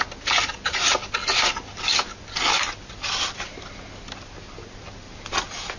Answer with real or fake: real